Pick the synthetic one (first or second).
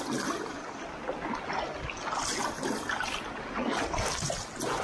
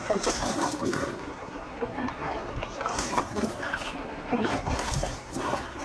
second